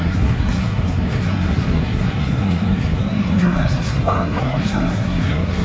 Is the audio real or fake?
fake